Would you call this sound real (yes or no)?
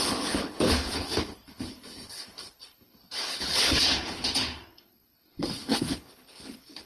no